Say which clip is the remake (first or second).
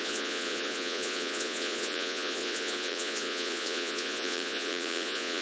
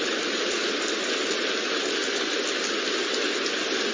first